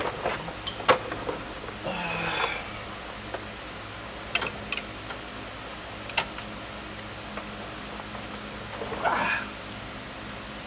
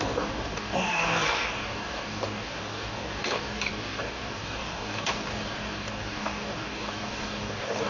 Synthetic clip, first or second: second